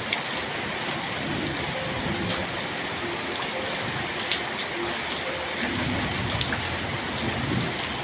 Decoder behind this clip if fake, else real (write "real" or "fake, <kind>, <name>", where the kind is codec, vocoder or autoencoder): real